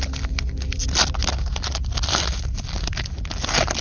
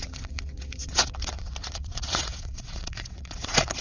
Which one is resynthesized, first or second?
second